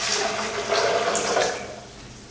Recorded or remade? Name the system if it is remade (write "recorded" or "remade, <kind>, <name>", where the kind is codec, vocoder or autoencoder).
recorded